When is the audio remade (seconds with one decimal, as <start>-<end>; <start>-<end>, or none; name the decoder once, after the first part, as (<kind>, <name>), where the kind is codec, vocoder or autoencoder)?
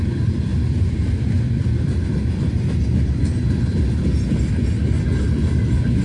0.5-2.0 (vocoder, BigVGAN v2)